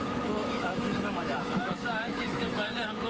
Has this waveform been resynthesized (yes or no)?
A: yes